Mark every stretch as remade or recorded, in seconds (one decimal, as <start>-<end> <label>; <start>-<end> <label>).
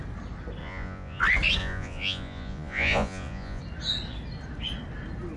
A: 0.0-0.6 recorded; 0.6-1.2 remade; 1.2-1.6 recorded; 1.6-3.6 remade; 3.6-5.4 recorded